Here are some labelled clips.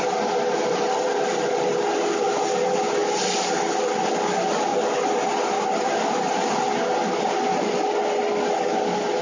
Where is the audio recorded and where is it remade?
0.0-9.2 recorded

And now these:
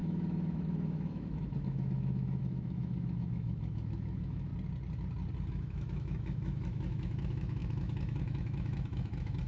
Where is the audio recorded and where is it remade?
0.0-4.5 remade; 4.5-5.5 recorded; 5.5-9.5 remade